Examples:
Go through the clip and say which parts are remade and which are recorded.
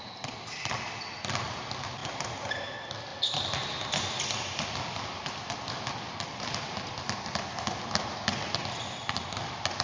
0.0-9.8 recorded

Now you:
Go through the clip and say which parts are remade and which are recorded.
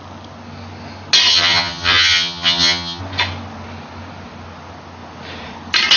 0.0-1.3 recorded; 1.3-3.0 remade; 3.0-6.0 recorded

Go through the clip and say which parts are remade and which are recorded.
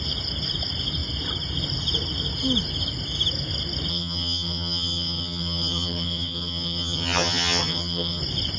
0.0-3.9 recorded; 3.9-8.2 remade; 8.2-8.6 recorded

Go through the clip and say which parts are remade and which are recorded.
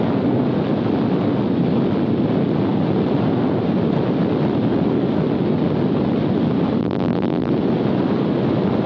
0.0-6.8 recorded; 6.8-7.5 remade; 7.5-8.9 recorded